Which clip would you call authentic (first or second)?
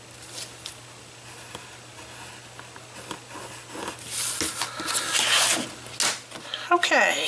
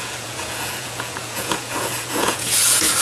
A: first